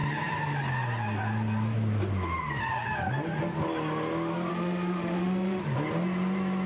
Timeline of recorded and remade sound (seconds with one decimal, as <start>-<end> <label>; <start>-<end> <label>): 0.0-4.5 recorded; 4.5-5.6 remade; 5.6-6.7 recorded